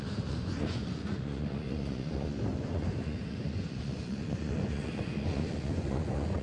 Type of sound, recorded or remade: remade